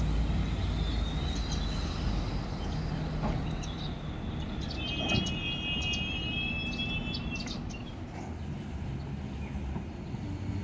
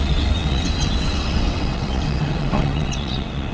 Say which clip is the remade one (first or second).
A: second